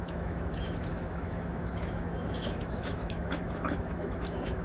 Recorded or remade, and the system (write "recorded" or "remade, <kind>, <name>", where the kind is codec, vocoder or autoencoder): remade, autoencoder, DAC-VAE